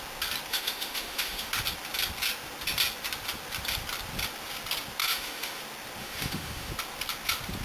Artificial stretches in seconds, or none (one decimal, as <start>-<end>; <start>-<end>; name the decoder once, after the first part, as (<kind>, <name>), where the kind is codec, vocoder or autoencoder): 0.5-1.5 (autoencoder, DAC-VAE); 5.0-5.6; 6.0-6.7